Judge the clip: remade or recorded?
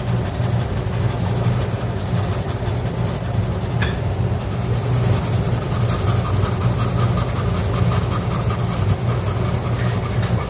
recorded